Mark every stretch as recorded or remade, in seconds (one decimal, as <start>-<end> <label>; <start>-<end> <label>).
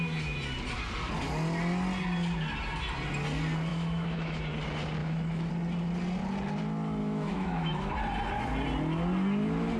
0.0-3.7 recorded; 3.7-4.4 remade; 4.4-5.0 recorded; 5.0-5.5 remade; 5.5-7.0 recorded; 7.0-7.9 remade; 7.9-9.8 recorded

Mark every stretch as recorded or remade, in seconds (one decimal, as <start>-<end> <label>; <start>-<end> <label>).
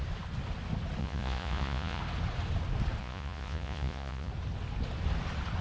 0.0-1.0 recorded; 1.0-2.0 remade; 2.0-3.0 recorded; 3.0-4.3 remade; 4.3-5.6 recorded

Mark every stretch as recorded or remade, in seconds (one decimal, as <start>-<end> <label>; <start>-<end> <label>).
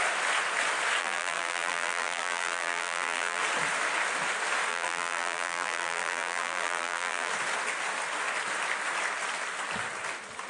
0.0-1.0 recorded; 1.0-3.4 remade; 3.4-4.7 recorded; 4.7-7.3 remade; 7.3-10.5 recorded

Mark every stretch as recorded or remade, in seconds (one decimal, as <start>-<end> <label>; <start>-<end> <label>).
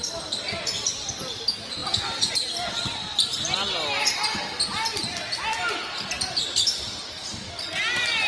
0.0-5.5 recorded; 5.5-6.3 remade; 6.3-8.3 recorded